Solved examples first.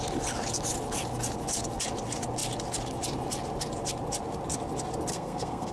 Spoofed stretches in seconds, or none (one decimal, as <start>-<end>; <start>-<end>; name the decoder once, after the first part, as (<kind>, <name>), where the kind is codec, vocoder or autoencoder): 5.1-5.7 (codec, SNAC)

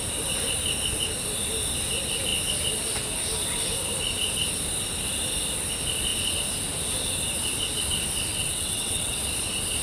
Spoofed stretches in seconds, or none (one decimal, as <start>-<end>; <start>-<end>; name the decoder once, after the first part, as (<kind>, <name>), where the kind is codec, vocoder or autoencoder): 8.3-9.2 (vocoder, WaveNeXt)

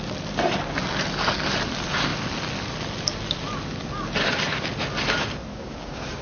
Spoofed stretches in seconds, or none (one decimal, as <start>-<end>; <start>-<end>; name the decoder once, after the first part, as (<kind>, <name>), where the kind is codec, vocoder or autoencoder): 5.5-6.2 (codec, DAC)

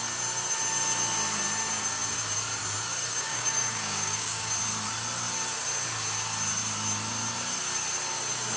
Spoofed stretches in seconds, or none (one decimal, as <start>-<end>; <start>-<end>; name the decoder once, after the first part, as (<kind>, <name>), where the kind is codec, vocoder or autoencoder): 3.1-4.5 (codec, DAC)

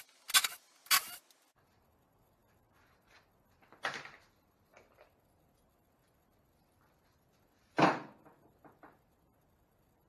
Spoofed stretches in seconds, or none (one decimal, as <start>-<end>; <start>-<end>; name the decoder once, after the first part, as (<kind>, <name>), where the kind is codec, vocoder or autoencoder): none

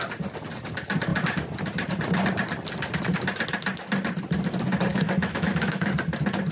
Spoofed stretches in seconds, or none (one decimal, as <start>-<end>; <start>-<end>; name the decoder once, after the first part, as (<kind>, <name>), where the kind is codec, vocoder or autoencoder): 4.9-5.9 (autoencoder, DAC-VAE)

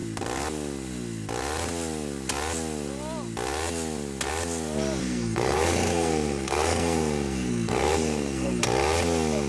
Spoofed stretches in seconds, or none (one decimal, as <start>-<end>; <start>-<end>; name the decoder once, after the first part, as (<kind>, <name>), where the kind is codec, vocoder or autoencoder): 5.0-8.6 (codec, SNAC)

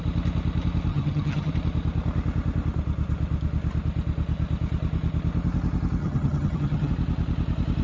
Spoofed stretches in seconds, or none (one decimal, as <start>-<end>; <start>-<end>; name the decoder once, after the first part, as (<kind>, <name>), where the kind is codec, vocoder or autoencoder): 0.9-1.5 (vocoder, HiFi-GAN); 6.0-6.9